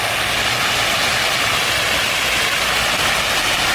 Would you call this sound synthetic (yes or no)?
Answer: no